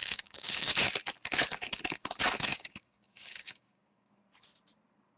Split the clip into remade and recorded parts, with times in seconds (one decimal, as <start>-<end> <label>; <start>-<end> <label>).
0.0-0.7 remade; 0.7-2.5 recorded; 2.5-4.1 remade; 4.1-5.2 recorded